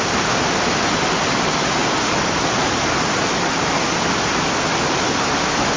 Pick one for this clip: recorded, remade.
recorded